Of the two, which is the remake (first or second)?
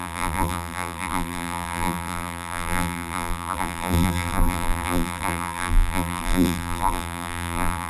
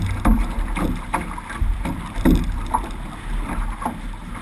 first